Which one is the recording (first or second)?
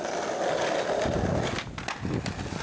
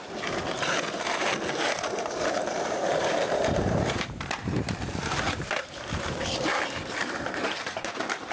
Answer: first